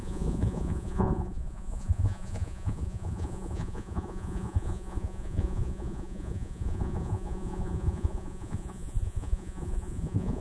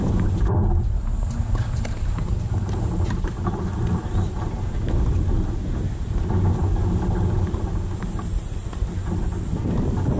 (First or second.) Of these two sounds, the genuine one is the second